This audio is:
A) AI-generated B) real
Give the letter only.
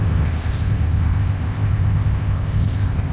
A